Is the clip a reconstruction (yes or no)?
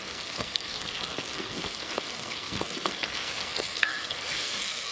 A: yes